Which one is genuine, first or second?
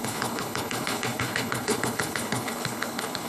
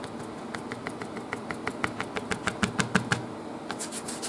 second